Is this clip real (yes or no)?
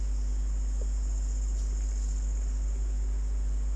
yes